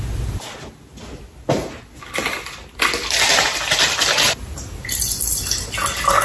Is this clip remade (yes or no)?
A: no